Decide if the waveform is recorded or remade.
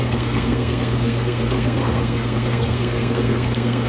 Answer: remade